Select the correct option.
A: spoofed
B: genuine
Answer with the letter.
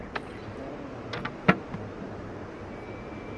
B